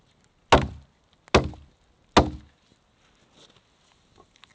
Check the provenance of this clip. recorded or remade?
recorded